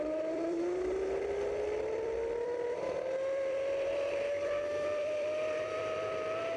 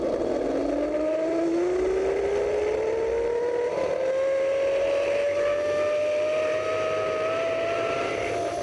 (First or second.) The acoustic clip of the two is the second